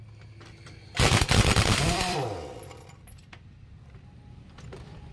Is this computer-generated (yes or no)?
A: yes